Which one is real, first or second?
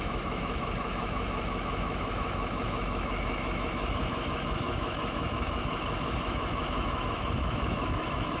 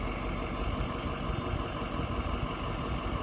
second